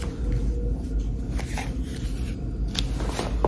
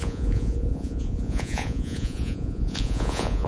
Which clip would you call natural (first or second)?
first